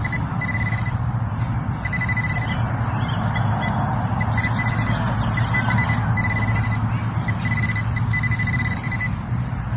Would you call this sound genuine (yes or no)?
yes